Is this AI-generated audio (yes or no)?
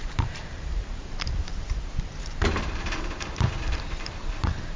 yes